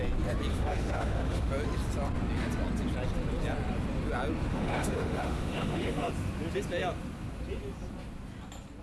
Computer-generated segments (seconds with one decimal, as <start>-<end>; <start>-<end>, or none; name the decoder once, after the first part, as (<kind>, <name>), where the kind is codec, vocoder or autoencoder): 0.5-1.5 (autoencoder, DAC-VAE); 4.5-6.1